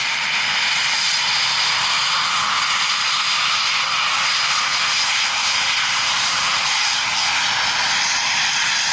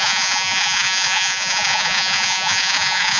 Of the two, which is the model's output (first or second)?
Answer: second